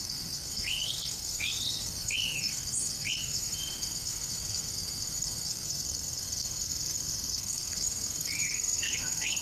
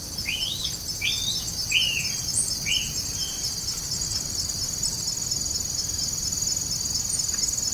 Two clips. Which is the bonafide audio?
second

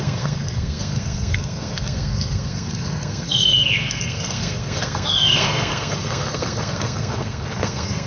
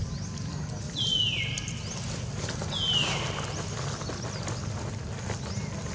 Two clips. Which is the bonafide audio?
second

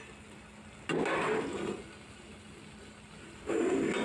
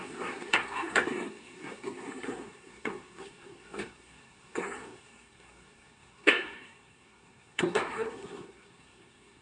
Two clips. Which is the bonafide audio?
first